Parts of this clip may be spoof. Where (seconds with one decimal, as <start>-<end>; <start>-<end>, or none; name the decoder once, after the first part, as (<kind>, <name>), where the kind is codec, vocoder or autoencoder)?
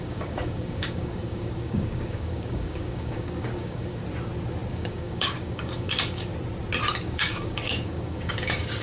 0.0-4.0 (codec, DAC); 4.7-6.3; 6.9-8.8